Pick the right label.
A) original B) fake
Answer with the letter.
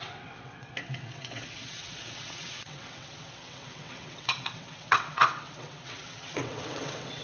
B